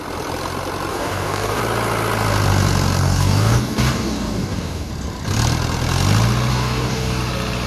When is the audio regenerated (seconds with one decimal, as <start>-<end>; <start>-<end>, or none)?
0.9-1.6; 3.0-4.9; 6.5-7.2